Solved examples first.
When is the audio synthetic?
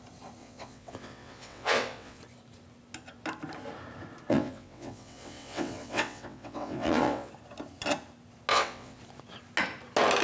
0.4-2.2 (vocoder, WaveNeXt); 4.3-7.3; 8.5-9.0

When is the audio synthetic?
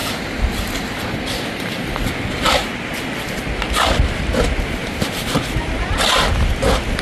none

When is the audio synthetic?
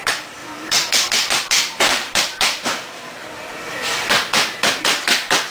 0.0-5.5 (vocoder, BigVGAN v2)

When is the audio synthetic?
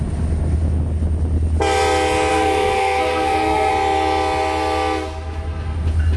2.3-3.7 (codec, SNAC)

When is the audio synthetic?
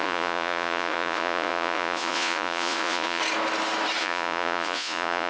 0.0-3.2 (vocoder, Vocos); 4.0-5.3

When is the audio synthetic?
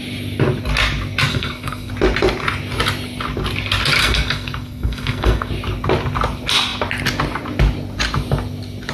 1.3-1.9 (codec, SNAC); 4.0-5.5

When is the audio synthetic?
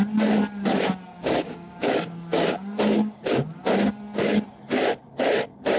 1.1-3.3 (codec, DAC)